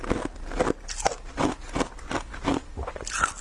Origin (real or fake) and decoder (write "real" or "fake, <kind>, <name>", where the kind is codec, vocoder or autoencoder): real